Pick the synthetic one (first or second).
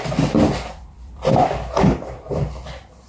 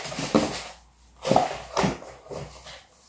first